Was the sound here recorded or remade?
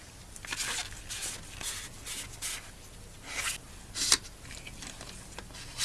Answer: recorded